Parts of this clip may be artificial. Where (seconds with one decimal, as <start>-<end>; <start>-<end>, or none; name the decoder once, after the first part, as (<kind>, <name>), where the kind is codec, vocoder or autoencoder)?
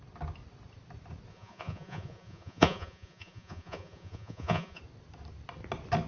1.3-4.8 (vocoder, Vocos)